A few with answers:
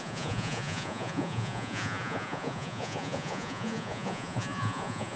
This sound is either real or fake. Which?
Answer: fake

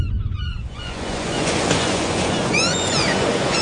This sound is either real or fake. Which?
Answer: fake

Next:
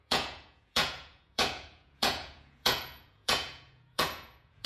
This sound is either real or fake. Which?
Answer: fake